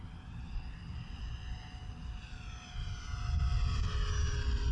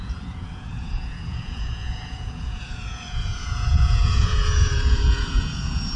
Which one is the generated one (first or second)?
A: second